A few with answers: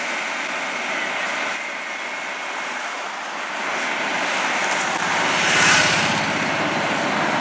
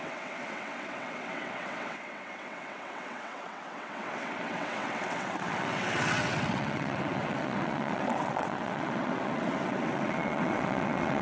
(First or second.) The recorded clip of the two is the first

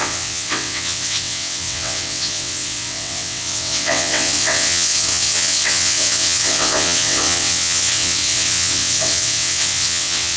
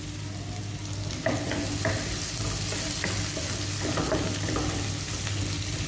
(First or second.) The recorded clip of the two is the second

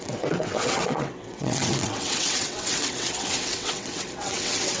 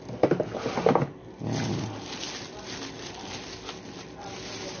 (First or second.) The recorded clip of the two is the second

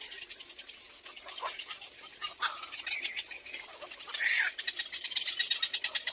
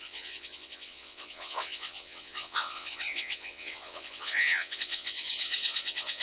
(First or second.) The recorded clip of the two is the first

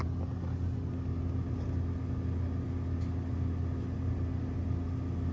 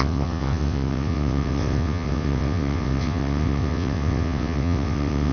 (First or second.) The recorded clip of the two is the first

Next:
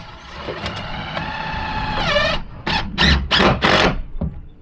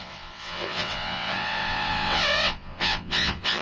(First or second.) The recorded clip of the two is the first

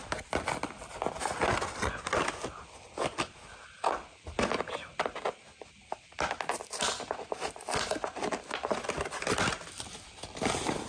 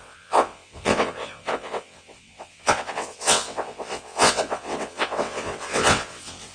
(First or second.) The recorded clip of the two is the first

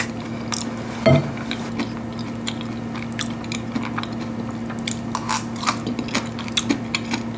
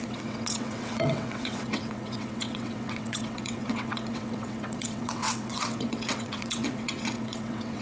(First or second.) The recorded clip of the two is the first